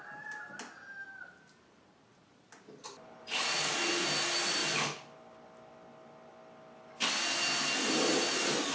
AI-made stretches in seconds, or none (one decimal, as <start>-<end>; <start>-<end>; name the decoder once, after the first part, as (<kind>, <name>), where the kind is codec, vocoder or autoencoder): 2.2-3.7 (vocoder, BigVGAN v2); 4.6-6.9